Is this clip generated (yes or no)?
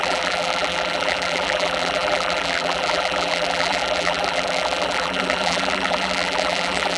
yes